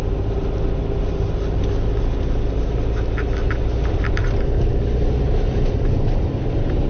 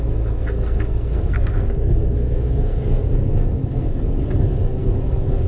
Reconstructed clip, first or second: second